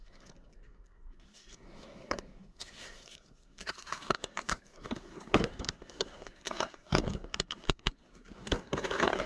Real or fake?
fake